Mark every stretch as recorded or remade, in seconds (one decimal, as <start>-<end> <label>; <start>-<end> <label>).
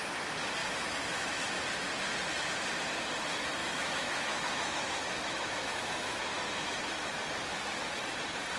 0.0-0.6 recorded; 0.6-1.5 remade; 1.5-3.6 recorded; 3.6-8.0 remade; 8.0-8.6 recorded